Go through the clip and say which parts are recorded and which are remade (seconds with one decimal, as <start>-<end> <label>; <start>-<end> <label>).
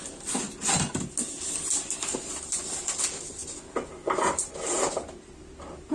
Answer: 0.0-5.9 recorded